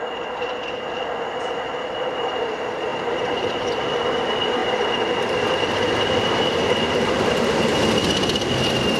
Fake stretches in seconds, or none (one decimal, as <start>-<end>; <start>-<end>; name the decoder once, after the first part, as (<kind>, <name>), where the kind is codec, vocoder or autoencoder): 2.9-3.7 (vocoder, BigVGAN v2)